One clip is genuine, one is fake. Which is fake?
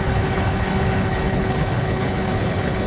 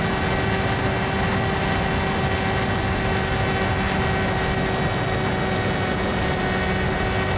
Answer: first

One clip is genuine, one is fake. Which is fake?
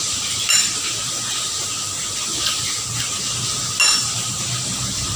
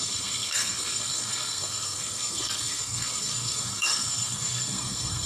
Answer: second